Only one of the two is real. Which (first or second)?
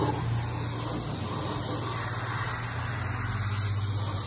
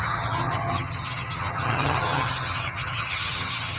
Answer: first